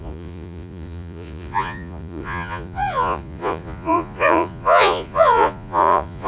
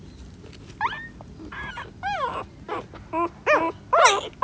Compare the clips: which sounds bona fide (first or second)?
second